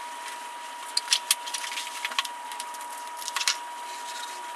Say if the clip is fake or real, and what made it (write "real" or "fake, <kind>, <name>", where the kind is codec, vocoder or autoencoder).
real